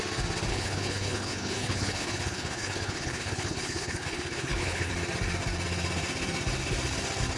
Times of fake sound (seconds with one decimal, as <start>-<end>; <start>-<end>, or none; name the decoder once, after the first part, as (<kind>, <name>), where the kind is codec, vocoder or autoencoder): 0.5-4.9 (codec, HILCodec)